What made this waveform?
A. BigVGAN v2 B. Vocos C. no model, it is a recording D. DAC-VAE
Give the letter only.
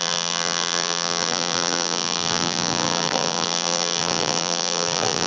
A